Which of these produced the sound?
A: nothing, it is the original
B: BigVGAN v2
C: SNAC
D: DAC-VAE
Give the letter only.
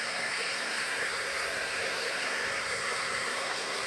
C